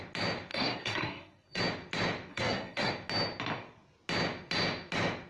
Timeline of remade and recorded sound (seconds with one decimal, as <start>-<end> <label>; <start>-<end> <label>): 0.0-0.5 recorded; 0.5-1.6 remade; 1.6-2.3 recorded; 2.3-2.9 remade; 2.9-5.3 recorded